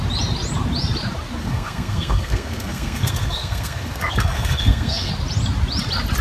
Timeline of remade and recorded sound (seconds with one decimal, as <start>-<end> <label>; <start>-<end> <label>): 0.0-1.4 recorded; 1.4-5.1 remade; 5.1-6.2 recorded